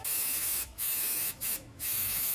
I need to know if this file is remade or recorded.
remade